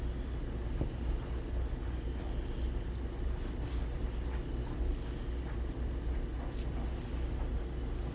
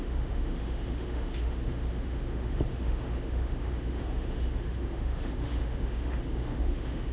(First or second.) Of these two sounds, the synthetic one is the second